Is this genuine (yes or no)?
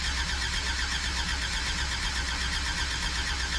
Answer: yes